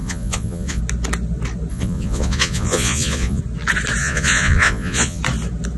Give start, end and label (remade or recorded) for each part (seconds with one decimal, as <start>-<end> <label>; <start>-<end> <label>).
0.0-0.8 remade; 0.8-1.7 recorded; 1.7-3.4 remade; 3.4-4.0 recorded; 4.0-5.2 remade; 5.2-5.8 recorded